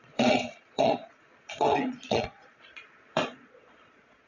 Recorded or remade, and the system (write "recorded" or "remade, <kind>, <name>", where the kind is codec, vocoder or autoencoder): remade, vocoder, Vocos